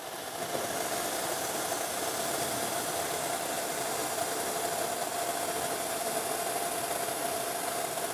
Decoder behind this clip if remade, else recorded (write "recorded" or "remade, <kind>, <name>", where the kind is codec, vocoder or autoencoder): recorded